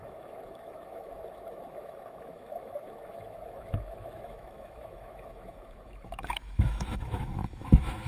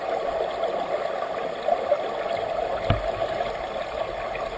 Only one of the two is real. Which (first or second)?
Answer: second